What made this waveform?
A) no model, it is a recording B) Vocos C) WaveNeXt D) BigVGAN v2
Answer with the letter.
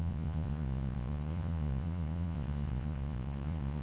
B